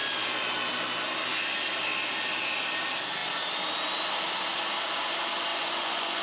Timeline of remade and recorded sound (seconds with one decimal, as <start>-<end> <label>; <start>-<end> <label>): 0.0-5.5 recorded; 5.5-6.2 remade